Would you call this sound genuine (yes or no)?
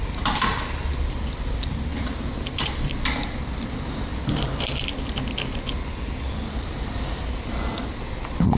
yes